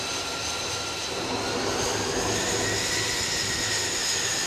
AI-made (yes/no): no